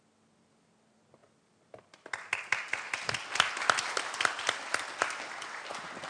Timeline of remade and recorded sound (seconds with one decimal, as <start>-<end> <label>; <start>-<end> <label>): 0.0-6.1 recorded